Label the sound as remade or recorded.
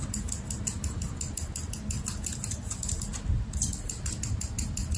recorded